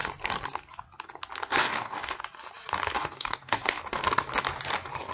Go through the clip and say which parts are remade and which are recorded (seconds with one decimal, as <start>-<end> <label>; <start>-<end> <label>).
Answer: 0.0-1.6 recorded; 1.6-2.2 remade; 2.2-3.0 recorded; 3.0-3.8 remade; 3.8-5.1 recorded